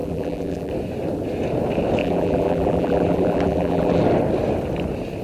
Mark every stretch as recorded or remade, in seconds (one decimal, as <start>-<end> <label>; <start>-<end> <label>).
0.0-0.7 remade; 0.7-2.0 recorded; 2.0-4.0 remade; 4.0-5.2 recorded